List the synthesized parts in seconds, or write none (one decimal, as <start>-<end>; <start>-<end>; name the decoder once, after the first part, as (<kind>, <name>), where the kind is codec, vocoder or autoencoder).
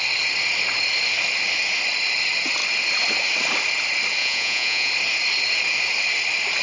4.2-4.9 (vocoder, Vocos)